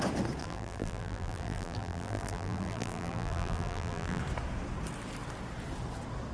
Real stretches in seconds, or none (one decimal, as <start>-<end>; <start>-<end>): 0.0-0.4; 4.2-6.3